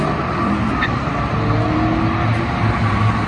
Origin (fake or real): real